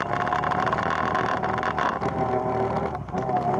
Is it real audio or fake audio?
real